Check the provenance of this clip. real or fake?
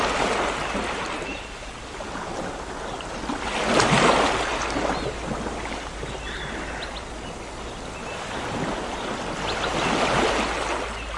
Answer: real